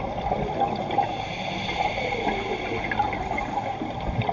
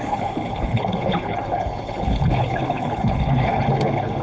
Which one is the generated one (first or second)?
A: second